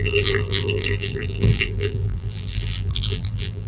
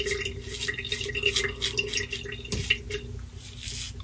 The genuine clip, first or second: second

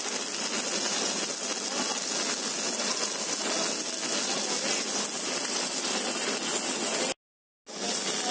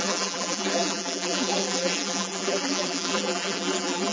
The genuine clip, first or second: first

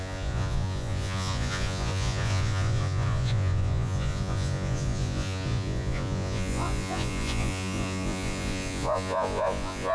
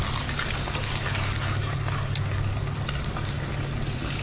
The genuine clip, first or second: second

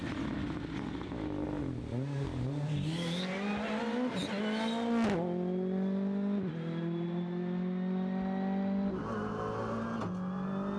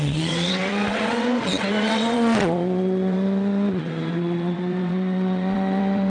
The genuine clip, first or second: first